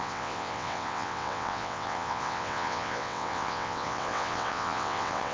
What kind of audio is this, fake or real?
fake